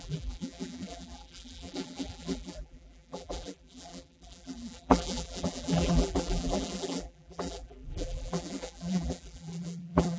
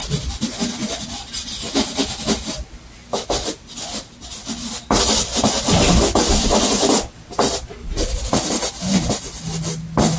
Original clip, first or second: second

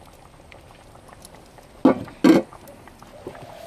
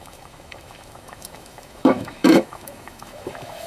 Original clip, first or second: first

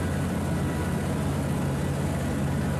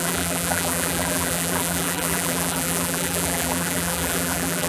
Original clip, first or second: first